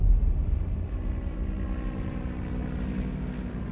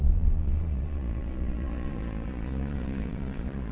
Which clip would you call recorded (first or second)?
first